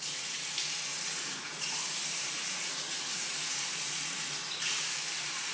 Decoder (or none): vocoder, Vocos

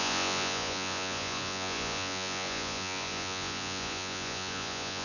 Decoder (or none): vocoder, Vocos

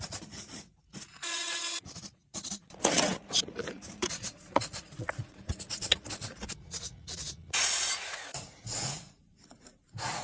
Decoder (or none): vocoder, Vocos